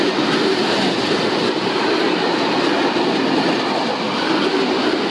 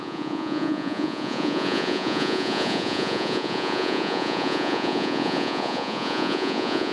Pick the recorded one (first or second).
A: first